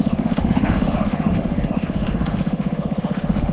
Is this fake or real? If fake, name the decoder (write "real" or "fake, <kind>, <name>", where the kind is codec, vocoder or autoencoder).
fake, autoencoder, DAC-VAE